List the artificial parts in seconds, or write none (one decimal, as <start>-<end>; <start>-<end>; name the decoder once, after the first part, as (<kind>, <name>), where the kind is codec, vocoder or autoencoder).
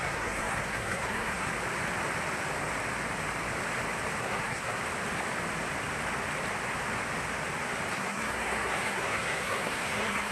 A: 0.0-1.5 (codec, SNAC); 4.2-4.8; 7.9-10.3